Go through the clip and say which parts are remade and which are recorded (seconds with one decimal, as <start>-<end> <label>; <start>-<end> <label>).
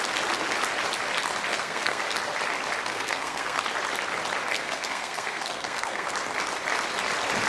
0.0-1.5 recorded; 1.5-2.0 remade; 2.0-2.9 recorded; 2.9-3.6 remade; 3.6-4.5 recorded; 4.5-6.1 remade; 6.1-7.5 recorded